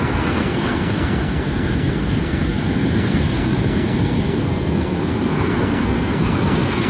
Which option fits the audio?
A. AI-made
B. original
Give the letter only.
A